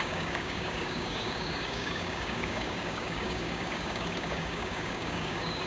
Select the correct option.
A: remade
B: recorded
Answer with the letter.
A